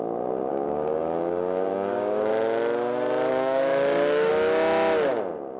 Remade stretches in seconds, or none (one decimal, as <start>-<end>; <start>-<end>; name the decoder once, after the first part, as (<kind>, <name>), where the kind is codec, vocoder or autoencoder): 0.5-2.3 (codec, DAC); 3.3-4.3